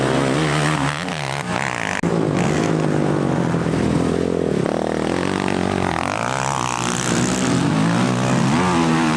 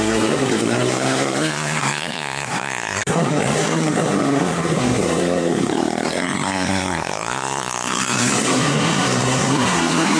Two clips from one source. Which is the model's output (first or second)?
second